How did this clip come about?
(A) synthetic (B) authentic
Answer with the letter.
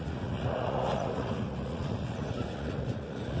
A